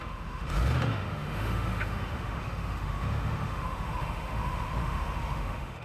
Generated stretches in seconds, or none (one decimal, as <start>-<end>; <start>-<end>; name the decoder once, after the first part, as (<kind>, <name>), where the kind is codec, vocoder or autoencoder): 0.0-5.8 (autoencoder, DAC-VAE)

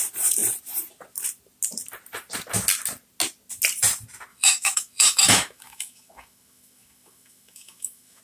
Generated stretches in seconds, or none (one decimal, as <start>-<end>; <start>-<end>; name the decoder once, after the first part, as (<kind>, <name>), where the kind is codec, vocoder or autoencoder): 4.3-8.2 (autoencoder, DAC-VAE)